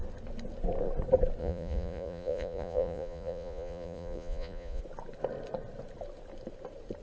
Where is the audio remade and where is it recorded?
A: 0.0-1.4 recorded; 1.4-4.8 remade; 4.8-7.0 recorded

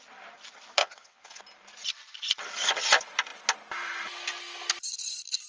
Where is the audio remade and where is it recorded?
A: 0.0-0.8 recorded; 0.8-1.4 remade; 1.4-5.5 recorded

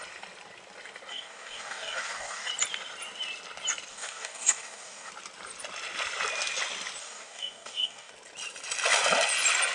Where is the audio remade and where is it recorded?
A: 0.0-1.1 recorded; 1.1-2.5 remade; 2.5-3.9 recorded; 3.9-5.1 remade; 5.1-7.0 recorded; 7.0-8.1 remade; 8.1-9.7 recorded

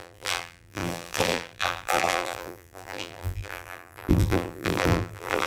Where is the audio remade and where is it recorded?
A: 0.0-5.5 remade

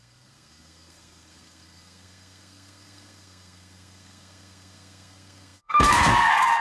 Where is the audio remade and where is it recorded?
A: 0.0-6.6 remade

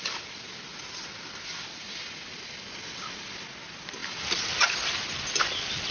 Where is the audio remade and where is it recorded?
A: 0.0-5.9 recorded